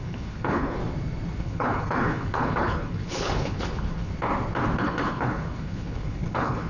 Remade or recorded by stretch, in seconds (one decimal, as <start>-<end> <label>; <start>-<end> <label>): 0.0-0.8 remade; 0.8-1.4 recorded; 1.4-4.1 remade; 4.1-4.8 recorded; 4.8-6.7 remade